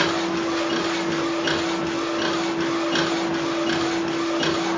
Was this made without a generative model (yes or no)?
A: yes